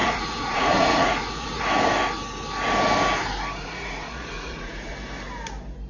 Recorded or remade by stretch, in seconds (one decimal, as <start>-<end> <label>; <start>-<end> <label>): 0.0-1.6 remade; 1.6-3.6 recorded; 3.6-4.9 remade; 4.9-5.9 recorded